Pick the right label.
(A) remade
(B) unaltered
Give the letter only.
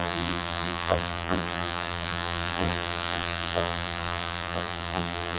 A